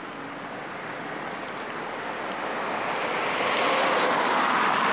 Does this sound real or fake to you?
real